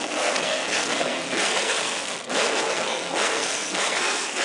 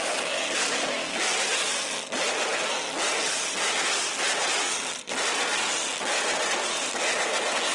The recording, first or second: second